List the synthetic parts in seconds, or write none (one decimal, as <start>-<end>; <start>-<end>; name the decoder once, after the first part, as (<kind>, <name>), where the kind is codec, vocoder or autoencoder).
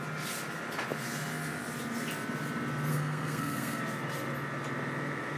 2.9-3.8 (codec, SNAC)